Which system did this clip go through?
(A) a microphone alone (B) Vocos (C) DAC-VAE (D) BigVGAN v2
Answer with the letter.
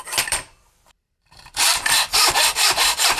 D